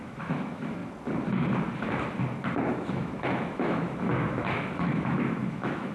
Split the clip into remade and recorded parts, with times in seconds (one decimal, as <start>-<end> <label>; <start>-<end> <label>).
0.0-0.8 remade; 0.8-2.7 recorded; 2.7-5.9 remade